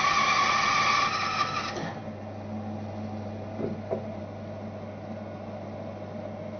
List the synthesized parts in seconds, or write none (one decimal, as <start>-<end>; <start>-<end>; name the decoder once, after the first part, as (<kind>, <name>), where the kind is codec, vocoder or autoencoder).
none